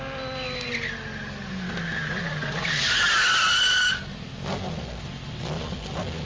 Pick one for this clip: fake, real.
real